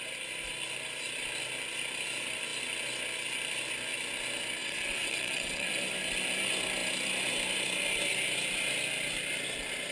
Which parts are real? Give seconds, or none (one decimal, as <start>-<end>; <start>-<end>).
0.0-4.6; 5.7-9.9